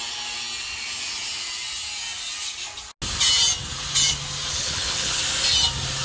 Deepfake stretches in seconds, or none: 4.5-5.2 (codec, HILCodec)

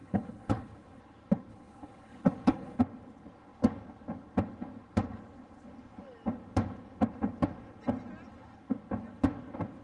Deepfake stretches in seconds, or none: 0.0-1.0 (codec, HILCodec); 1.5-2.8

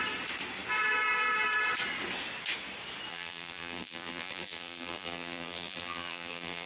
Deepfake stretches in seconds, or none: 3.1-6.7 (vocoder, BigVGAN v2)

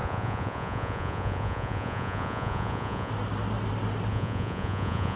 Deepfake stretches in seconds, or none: 0.0-3.1 (vocoder, Vocos); 4.1-5.2